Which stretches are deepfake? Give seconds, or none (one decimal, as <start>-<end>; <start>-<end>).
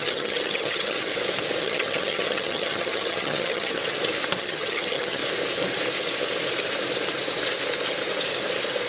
0.0-1.1; 1.6-3.8; 4.4-5.2